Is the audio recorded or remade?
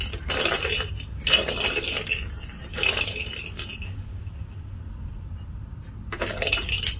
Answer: recorded